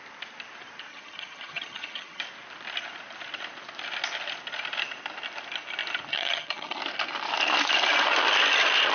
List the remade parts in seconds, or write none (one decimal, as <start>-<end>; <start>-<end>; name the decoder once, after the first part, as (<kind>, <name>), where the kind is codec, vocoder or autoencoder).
0.9-2.2 (vocoder, HiFi-GAN); 6.1-6.8